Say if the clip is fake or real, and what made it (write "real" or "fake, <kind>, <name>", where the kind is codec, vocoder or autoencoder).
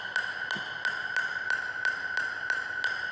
real